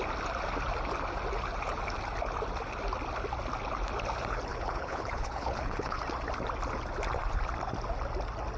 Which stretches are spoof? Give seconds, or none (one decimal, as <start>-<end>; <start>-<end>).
4.5-6.0